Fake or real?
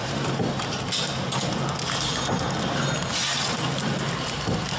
real